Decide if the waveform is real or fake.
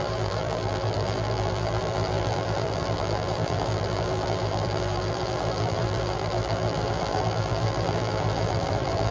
fake